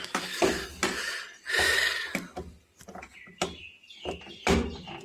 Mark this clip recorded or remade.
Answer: recorded